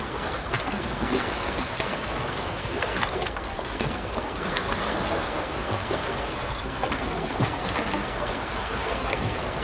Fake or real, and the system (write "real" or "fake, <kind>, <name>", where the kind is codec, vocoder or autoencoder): fake, codec, SNAC